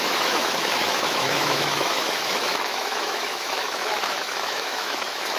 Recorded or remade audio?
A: remade